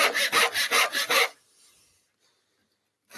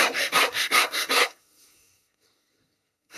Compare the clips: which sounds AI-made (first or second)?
second